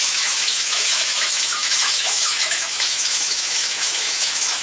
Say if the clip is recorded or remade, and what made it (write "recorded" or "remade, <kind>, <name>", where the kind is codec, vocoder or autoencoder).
remade, autoencoder, DAC-VAE